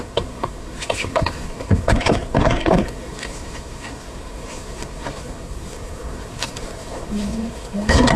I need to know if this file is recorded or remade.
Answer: remade